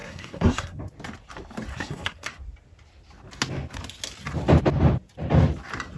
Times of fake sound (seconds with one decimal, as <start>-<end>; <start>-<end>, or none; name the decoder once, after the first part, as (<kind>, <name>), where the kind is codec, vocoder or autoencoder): 0.0-0.8 (codec, SNAC); 1.7-2.3